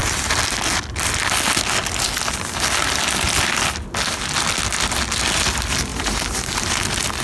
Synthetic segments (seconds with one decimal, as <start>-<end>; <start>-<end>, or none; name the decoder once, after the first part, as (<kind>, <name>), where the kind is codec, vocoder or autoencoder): 5.9-6.6 (vocoder, BigVGAN v2)